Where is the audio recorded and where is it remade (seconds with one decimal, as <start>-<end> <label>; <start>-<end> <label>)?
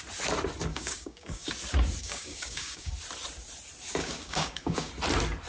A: 0.0-0.7 recorded; 0.7-1.5 remade; 1.5-2.0 recorded; 2.0-2.9 remade; 2.9-4.0 recorded; 4.0-4.9 remade; 4.9-5.5 recorded